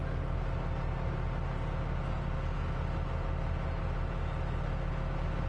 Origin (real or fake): real